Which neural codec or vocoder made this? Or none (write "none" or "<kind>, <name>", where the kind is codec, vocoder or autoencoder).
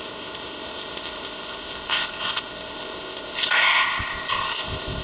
codec, ZipCodec